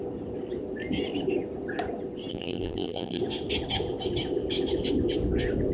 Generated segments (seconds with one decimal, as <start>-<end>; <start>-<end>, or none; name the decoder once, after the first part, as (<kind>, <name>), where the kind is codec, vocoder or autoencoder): 2.3-3.2 (vocoder, BigVGAN v2)